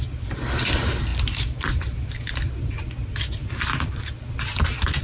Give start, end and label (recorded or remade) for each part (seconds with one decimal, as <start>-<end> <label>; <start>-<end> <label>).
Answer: 0.0-1.1 recorded; 1.1-2.3 remade; 2.3-3.4 recorded; 3.4-4.0 remade; 4.0-5.0 recorded